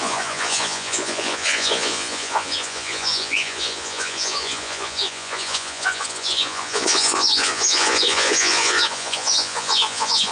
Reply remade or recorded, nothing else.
remade